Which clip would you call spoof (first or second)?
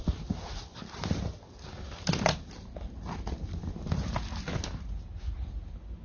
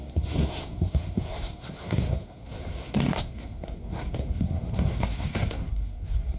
second